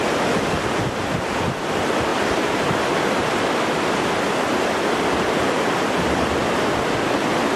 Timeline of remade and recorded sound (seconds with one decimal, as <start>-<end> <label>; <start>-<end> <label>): 0.0-7.6 recorded